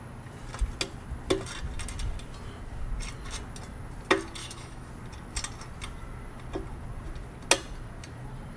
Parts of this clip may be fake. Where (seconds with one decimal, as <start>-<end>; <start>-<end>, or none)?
4.4-4.9